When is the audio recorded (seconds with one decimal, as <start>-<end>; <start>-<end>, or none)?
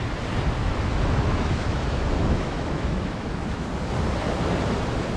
0.0-0.6; 3.7-5.2